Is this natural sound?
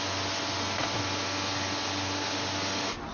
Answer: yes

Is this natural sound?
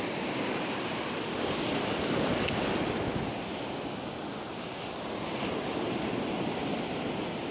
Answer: yes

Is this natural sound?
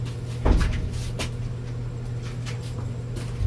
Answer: yes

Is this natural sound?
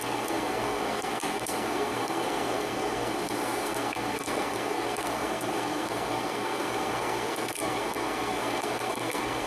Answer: no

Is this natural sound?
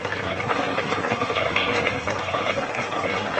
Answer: no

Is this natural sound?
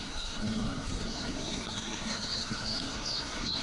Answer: no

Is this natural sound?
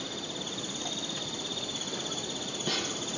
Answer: yes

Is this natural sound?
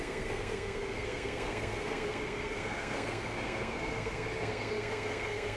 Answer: no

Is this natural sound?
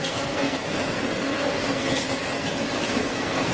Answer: no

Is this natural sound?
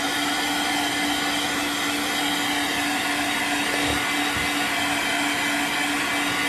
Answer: yes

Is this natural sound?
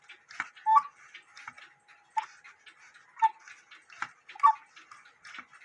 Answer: yes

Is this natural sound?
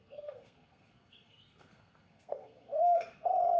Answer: no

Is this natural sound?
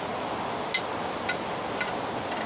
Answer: yes